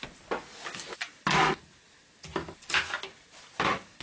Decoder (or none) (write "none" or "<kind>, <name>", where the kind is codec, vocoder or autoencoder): none